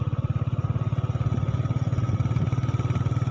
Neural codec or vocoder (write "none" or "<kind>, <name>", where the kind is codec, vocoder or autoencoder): none